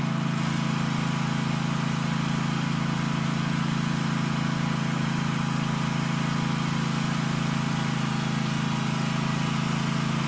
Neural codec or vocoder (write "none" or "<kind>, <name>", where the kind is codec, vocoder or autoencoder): none